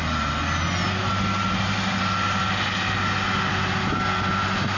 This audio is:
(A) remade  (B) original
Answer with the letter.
B